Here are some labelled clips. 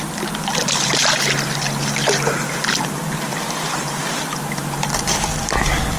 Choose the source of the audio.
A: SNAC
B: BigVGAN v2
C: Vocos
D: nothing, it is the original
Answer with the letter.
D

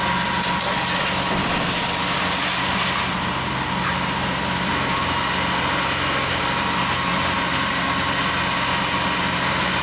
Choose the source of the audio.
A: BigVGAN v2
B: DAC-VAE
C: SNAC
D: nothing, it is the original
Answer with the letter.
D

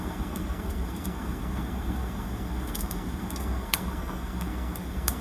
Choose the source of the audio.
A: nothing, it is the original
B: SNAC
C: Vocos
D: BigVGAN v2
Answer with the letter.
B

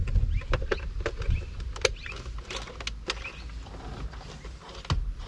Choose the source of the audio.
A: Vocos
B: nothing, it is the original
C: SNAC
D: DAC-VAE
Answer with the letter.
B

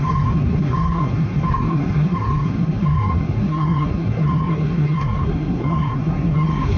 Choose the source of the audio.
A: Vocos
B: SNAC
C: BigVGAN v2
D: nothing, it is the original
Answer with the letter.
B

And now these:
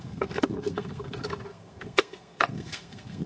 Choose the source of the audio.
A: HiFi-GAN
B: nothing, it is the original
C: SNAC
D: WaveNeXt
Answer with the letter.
C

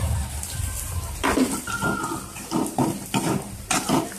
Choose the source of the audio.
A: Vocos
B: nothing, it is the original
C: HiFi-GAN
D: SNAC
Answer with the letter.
B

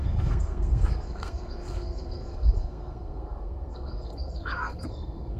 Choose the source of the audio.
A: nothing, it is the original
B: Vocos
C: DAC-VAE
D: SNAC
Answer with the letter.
D